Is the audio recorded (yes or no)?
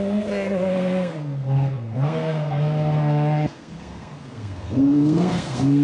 no